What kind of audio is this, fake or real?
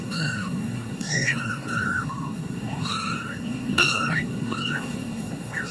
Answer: fake